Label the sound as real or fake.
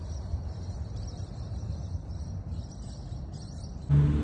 real